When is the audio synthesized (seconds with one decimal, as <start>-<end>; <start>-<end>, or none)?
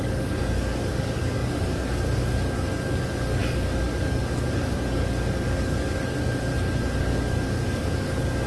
0.0-6.5; 7.0-8.5